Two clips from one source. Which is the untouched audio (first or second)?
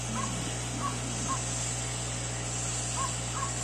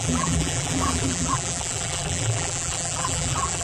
first